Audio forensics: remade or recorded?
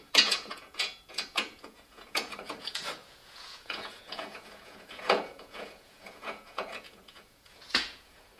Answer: remade